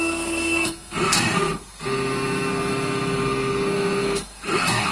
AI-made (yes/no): yes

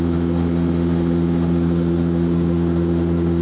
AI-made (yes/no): yes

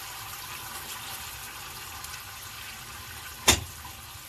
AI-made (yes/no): yes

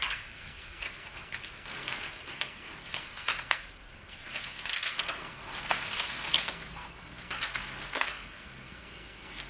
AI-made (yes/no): yes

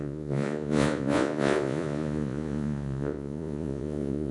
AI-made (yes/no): yes